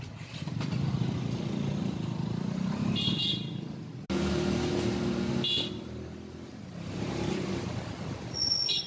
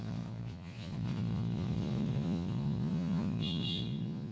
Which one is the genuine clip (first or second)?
first